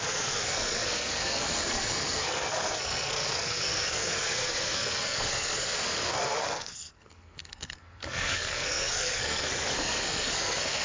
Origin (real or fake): fake